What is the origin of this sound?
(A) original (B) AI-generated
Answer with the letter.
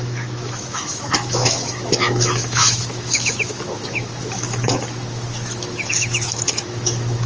B